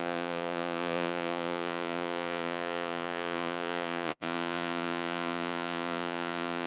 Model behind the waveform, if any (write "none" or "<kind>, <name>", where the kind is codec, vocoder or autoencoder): vocoder, Vocos